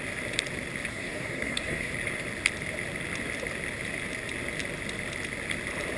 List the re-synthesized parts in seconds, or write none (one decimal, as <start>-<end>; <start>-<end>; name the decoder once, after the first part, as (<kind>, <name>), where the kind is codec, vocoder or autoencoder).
0.9-1.9 (codec, SNAC)